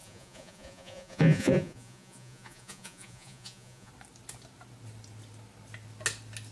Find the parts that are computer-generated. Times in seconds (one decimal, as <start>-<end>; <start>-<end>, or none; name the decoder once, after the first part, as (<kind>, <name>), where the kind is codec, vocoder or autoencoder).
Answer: 0.0-3.9 (vocoder, Vocos)